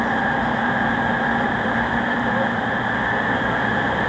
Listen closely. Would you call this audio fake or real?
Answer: fake